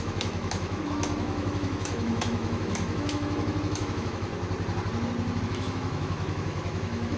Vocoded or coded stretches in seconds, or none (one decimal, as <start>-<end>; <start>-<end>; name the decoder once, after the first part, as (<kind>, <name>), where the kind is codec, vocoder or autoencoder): 0.0-4.3 (autoencoder, DAC-VAE); 5.4-7.2